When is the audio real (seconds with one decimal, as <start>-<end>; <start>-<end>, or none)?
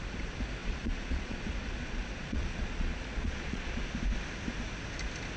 0.0-0.6; 3.8-5.4